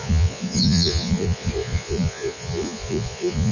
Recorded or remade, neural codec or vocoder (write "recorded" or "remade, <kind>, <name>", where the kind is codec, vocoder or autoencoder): remade, vocoder, Vocos